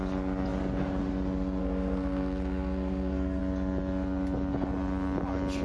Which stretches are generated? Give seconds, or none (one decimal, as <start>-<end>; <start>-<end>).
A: 1.6-3.4